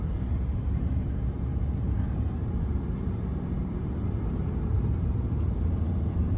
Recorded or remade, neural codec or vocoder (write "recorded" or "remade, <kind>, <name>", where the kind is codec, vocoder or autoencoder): remade, vocoder, BigVGAN v2